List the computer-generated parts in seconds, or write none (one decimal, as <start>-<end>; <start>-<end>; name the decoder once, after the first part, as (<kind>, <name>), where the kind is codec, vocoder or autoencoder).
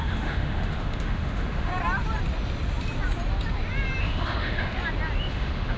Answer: 0.0-1.7 (autoencoder, DAC-VAE); 4.0-4.7; 5.3-5.8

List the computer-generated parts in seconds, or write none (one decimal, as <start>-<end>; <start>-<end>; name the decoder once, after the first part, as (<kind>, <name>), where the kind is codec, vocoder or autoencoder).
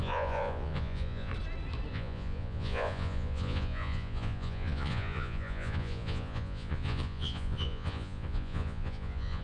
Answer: 0.0-1.3 (vocoder, Vocos); 1.9-9.4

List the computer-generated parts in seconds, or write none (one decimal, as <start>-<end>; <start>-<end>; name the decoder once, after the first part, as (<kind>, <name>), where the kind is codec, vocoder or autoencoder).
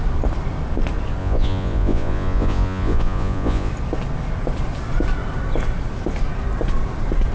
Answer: 1.2-3.7 (vocoder, Vocos)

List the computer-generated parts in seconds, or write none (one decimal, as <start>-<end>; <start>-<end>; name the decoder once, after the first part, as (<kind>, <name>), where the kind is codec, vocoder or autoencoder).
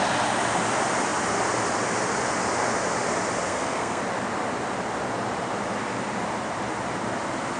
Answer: 3.5-4.0 (codec, SNAC)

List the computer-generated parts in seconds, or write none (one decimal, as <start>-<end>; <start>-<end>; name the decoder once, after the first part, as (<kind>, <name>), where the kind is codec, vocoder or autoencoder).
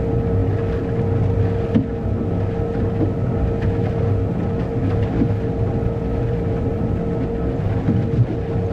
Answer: 4.8-5.5 (vocoder, BigVGAN v2); 6.1-6.8